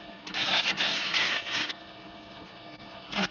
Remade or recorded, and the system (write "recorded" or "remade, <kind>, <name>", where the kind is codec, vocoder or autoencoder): remade, codec, SNAC